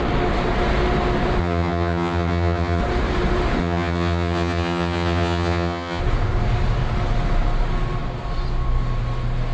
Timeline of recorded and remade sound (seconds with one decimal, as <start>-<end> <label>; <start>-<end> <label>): 0.0-1.4 recorded; 1.4-2.8 remade; 2.8-3.6 recorded; 3.6-6.0 remade; 6.0-9.5 recorded